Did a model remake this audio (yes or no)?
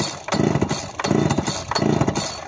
no